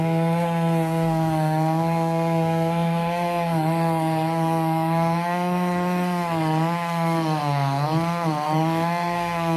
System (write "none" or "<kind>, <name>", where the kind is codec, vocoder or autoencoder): codec, SNAC